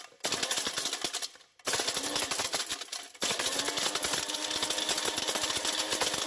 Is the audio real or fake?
real